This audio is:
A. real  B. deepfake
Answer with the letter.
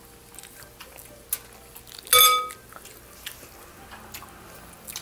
A